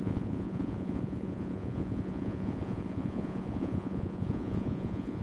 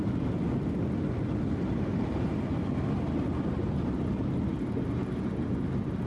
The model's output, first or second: first